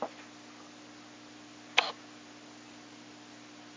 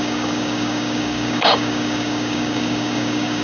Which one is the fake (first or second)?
second